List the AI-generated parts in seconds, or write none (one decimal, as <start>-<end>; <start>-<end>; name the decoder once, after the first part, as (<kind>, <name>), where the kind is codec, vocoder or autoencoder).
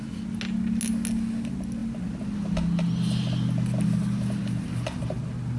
none